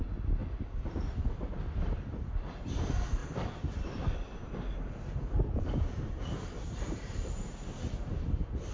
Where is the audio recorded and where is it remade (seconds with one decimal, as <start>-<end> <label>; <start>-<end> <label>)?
0.0-0.4 recorded; 0.4-1.2 remade; 1.2-3.2 recorded; 3.2-7.9 remade; 7.9-8.7 recorded